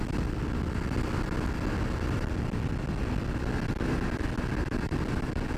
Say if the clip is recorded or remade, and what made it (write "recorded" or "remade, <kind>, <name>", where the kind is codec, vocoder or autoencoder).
recorded